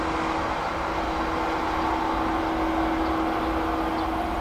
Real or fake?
real